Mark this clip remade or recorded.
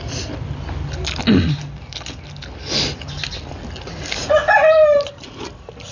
recorded